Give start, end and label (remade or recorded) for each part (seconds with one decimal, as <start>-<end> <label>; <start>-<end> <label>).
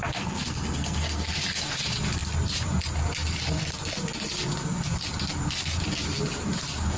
0.0-1.4 remade; 1.4-7.0 recorded